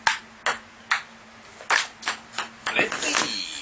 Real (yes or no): yes